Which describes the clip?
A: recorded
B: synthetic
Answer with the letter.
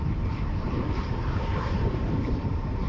B